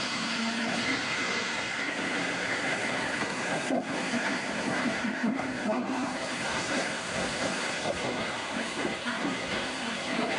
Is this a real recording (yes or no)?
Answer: no